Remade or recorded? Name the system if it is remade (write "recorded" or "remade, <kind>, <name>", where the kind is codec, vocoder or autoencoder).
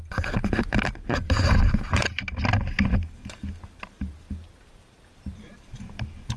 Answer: remade, vocoder, BigVGAN v2